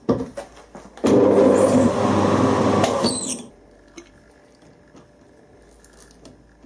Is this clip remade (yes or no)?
no